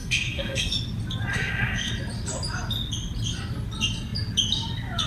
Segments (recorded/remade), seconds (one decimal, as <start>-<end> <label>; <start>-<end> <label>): 0.0-0.7 remade; 0.7-1.3 recorded; 1.3-1.9 remade; 1.9-5.1 recorded